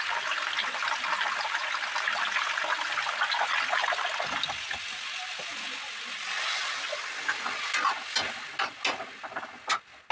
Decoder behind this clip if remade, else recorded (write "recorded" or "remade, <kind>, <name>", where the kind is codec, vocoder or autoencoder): recorded